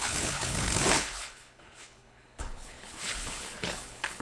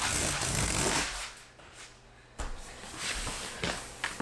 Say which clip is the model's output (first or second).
first